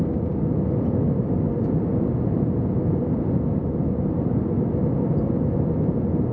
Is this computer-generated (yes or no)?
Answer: no